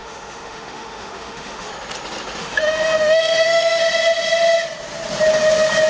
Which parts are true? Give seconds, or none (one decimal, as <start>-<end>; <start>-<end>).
1.7-2.4; 3.8-5.9